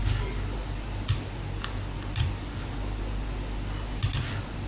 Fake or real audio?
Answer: real